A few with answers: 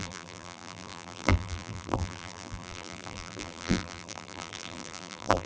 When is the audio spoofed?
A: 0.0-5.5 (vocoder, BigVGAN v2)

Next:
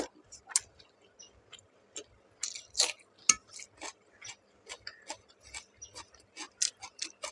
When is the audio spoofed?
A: none

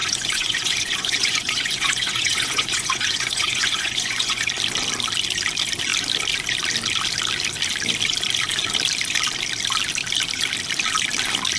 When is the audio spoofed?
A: 0.0-4.5 (vocoder, Vocos)